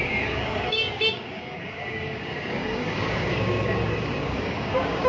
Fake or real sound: fake